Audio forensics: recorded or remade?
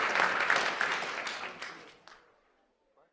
recorded